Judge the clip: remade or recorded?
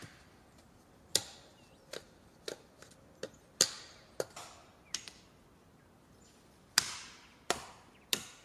recorded